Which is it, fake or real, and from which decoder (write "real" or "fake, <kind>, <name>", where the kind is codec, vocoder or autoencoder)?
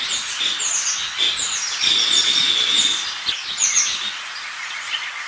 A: real